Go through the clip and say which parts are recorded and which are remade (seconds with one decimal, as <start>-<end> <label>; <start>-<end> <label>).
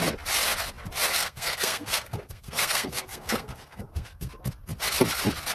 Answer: 0.0-1.1 recorded; 1.1-4.3 remade; 4.3-5.5 recorded